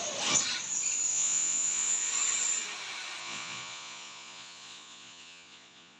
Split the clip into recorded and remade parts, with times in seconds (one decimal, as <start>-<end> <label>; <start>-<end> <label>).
0.0-1.1 recorded; 1.1-2.1 remade; 2.1-3.2 recorded; 3.2-6.0 remade